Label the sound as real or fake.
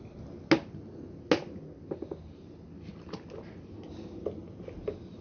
real